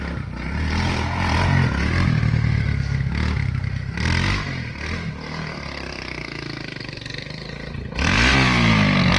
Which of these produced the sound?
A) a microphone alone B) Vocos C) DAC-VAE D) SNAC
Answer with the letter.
A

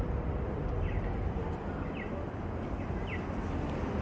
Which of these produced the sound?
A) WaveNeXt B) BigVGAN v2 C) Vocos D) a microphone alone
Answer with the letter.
D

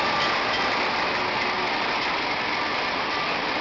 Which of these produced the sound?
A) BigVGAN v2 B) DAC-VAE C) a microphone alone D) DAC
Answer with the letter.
C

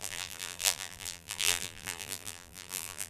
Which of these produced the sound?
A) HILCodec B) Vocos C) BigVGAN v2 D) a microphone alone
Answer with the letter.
C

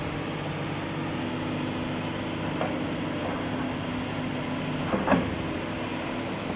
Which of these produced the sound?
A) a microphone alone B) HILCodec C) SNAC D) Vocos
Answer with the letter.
A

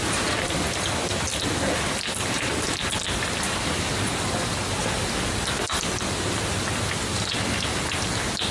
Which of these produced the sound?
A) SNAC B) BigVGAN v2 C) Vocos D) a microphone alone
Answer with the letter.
D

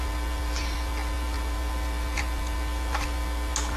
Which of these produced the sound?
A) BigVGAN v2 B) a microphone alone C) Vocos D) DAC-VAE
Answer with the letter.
B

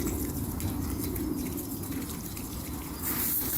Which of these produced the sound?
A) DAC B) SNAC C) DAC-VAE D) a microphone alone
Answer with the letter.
D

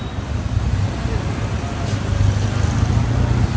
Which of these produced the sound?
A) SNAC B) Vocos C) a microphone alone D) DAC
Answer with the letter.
C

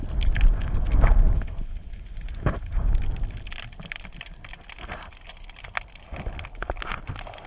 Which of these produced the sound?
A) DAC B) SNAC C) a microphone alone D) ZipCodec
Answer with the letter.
C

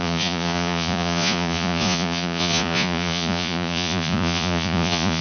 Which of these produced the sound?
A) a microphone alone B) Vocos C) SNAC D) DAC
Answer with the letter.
B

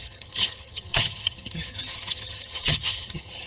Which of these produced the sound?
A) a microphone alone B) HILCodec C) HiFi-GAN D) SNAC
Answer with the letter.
C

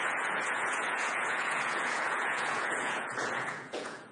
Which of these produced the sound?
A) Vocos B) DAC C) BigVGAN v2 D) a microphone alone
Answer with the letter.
A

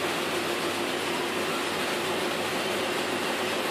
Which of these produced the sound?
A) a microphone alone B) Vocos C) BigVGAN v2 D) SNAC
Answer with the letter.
A